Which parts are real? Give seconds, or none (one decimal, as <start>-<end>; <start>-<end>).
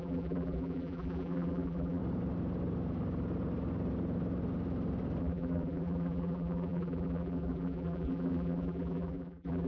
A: 2.0-5.2